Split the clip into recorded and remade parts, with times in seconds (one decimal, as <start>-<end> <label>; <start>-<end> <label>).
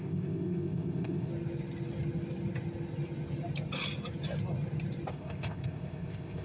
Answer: 0.0-1.3 remade; 1.3-5.1 recorded; 5.1-6.4 remade